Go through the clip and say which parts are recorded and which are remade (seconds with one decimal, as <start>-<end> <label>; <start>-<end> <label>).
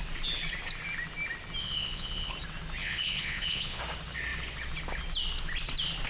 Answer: 0.0-1.6 recorded; 1.6-2.3 remade; 2.3-2.8 recorded; 2.8-3.8 remade; 3.8-6.1 recorded